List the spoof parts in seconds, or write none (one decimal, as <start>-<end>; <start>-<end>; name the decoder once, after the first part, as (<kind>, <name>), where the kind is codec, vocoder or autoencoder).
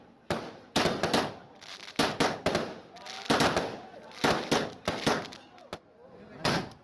none